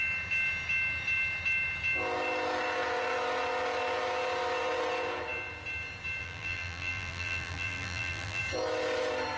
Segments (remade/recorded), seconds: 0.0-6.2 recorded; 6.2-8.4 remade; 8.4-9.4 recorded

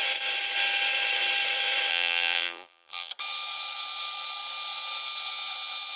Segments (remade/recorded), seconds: 0.0-1.9 recorded; 1.9-3.1 remade; 3.1-6.0 recorded

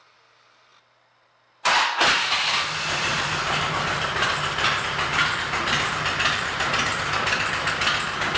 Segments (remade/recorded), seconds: 0.0-3.0 recorded; 3.0-6.7 remade; 6.7-8.4 recorded

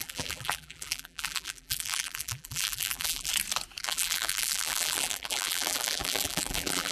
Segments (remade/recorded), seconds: 0.0-3.3 remade; 3.3-3.8 recorded; 3.8-6.9 remade

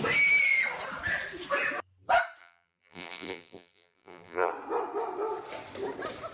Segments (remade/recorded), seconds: 0.0-2.4 recorded; 2.4-4.5 remade; 4.5-6.3 recorded